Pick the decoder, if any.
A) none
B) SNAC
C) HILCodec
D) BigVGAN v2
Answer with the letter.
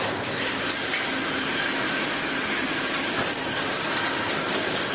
A